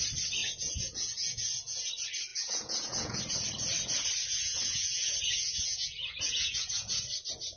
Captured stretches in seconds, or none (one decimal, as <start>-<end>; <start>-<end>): 0.0-0.4; 1.9-2.3; 3.2-4.3; 6.9-7.6